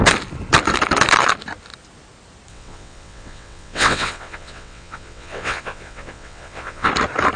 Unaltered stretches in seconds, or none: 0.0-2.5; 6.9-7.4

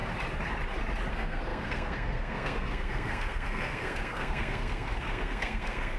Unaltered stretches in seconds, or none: 0.0-1.1

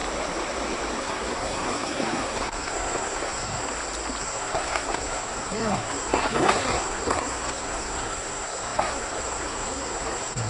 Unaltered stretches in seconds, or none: 0.0-1.0; 3.6-4.2

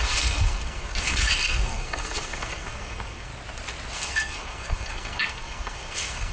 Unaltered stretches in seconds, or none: 3.3-3.9

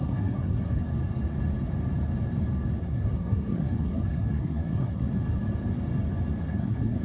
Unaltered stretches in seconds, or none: 0.8-2.8; 5.1-6.4

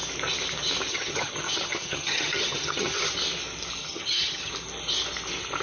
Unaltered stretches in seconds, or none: 0.0-0.9; 3.1-3.8; 4.5-5.6